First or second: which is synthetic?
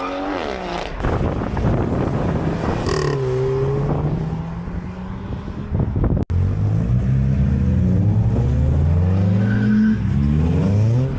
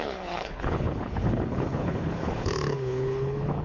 second